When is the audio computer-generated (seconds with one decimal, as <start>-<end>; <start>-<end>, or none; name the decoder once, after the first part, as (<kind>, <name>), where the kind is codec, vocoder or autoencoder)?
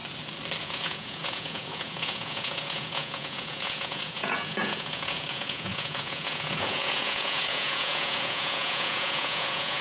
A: 0.6-9.8 (vocoder, Vocos)